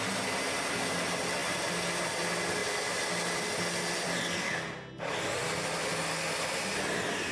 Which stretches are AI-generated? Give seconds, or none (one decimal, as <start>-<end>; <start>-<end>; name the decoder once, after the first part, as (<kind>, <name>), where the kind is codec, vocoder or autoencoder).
none

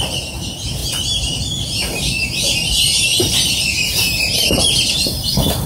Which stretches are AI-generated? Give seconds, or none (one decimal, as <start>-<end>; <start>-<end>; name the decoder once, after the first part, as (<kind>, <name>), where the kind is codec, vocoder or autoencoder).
0.0-5.7 (vocoder, BigVGAN v2)

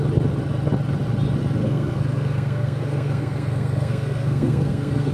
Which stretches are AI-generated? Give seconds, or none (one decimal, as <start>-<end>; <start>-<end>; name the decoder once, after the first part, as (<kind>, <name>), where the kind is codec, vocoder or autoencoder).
1.6-5.1 (codec, SNAC)

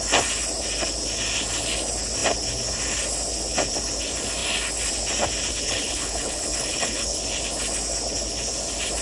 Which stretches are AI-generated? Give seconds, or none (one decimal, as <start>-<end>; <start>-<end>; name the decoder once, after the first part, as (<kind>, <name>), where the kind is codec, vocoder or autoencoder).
5.5-7.2 (codec, HILCodec)

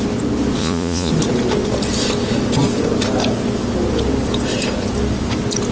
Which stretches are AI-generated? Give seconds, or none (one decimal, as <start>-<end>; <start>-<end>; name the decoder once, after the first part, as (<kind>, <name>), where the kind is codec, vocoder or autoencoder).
0.6-1.1 (vocoder, Vocos)

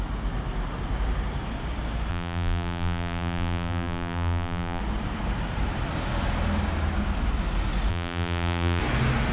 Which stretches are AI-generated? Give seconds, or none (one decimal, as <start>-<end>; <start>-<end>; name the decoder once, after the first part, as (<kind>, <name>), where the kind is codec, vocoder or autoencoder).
2.1-4.8 (vocoder, BigVGAN v2); 7.9-8.8